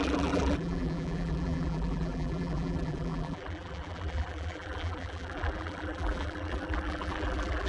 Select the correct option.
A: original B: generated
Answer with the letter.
B